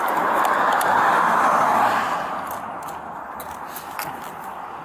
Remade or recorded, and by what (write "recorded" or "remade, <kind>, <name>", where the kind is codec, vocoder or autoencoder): recorded